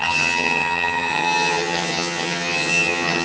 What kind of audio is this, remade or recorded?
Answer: remade